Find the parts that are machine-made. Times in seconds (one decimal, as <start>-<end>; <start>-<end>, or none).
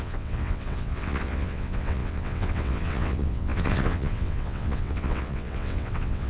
0.0-6.3